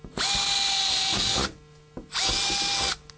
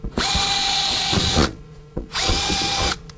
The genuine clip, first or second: first